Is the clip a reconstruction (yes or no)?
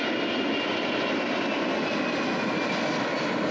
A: no